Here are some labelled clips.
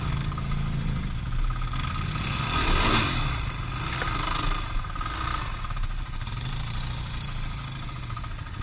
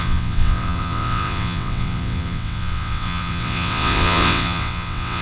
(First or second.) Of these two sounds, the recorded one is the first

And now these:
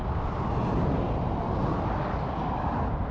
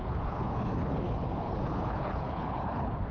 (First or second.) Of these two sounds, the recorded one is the first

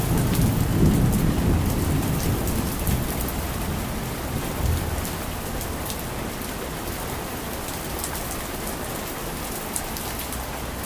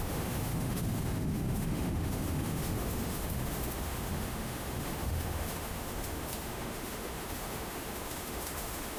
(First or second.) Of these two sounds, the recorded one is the first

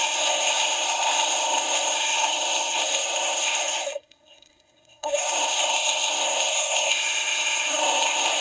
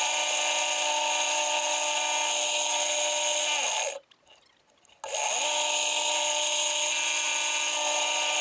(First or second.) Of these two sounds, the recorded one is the second